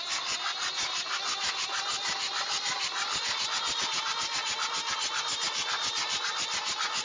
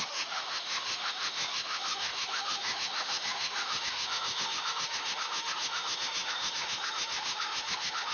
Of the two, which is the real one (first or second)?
first